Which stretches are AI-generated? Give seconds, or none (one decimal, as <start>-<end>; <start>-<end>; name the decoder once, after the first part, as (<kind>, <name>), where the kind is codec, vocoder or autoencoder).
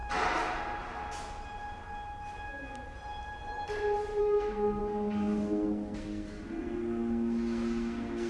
4.2-8.3 (codec, SNAC)